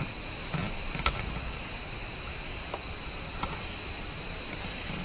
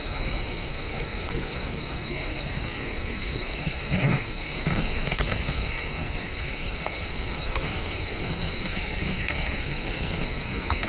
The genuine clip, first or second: first